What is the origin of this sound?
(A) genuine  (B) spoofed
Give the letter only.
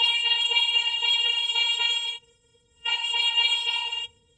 B